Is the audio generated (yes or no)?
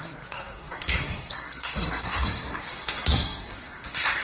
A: yes